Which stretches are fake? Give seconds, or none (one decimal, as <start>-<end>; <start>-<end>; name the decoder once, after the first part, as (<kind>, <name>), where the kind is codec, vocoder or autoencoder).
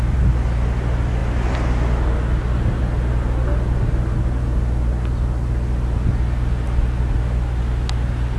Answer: none